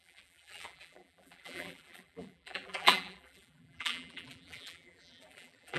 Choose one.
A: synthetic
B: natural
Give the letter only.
A